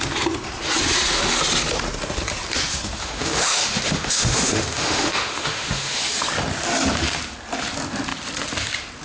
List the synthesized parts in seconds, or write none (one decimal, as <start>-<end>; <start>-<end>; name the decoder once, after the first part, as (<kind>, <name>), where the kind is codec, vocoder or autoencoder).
3.0-6.0 (autoencoder, DAC-VAE)